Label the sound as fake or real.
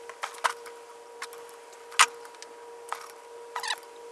real